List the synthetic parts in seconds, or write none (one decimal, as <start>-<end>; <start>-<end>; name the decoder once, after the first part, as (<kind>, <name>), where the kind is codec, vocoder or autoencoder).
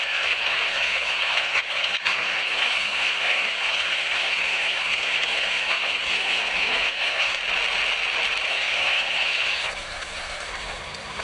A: 0.0-7.4 (codec, SNAC); 8.5-11.2